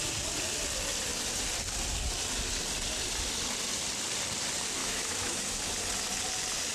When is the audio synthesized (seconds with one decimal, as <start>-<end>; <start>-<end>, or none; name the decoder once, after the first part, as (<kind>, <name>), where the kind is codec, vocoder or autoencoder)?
4.8-5.4 (autoencoder, DAC-VAE)